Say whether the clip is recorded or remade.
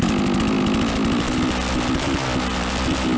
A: recorded